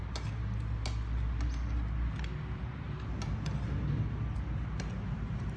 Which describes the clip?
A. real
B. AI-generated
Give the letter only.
A